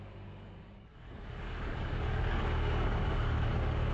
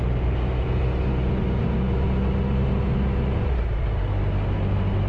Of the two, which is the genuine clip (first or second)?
second